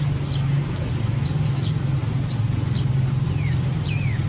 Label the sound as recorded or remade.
recorded